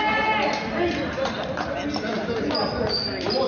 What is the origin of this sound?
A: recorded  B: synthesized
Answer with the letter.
A